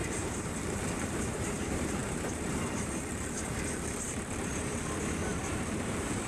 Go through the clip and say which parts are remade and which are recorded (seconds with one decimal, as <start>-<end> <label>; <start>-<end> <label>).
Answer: 0.0-4.5 remade; 4.5-5.3 recorded; 5.3-6.3 remade